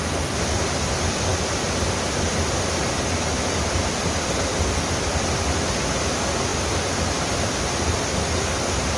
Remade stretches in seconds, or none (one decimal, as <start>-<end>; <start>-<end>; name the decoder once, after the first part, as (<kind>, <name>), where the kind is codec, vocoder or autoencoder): none